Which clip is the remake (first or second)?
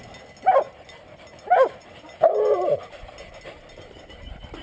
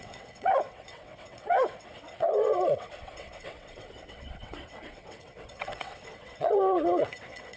second